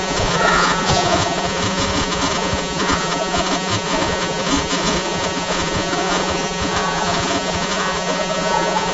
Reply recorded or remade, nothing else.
remade